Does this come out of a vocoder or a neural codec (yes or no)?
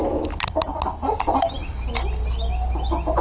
no